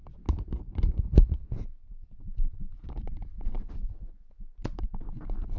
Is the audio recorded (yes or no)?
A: yes